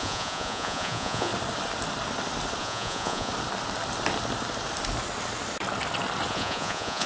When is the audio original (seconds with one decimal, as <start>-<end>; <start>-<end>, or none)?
1.3-2.6; 3.3-6.3